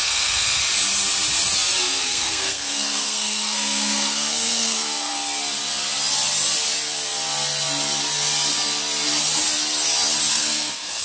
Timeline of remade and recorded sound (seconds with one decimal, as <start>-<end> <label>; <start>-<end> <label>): 0.0-0.6 remade; 0.6-1.8 recorded; 1.8-5.1 remade; 5.1-10.3 recorded; 10.3-11.0 remade